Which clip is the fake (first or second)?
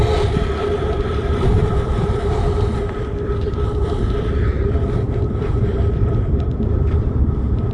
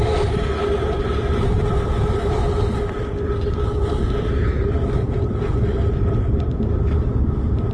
first